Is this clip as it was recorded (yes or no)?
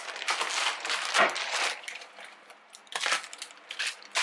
yes